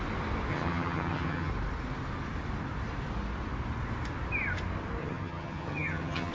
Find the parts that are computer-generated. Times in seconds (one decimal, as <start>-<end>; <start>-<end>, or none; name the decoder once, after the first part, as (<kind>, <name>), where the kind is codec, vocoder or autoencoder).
0.5-1.5 (vocoder, HiFi-GAN); 5.0-6.3